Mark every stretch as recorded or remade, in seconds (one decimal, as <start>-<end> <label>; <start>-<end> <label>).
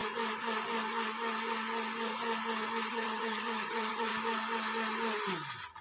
0.0-2.9 recorded; 2.9-4.1 remade; 4.1-5.8 recorded